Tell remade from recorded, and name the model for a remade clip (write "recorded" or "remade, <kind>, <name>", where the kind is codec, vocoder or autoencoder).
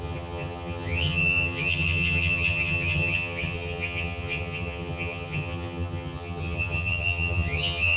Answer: remade, vocoder, HiFi-GAN